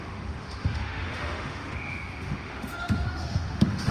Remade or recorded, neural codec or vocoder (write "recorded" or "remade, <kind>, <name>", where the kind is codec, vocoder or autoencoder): remade, autoencoder, DAC-VAE